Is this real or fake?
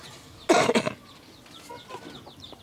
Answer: real